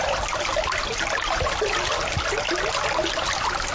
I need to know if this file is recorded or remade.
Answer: recorded